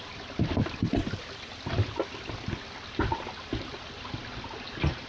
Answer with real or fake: real